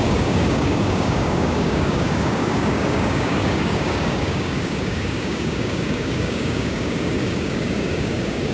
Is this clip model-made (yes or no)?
yes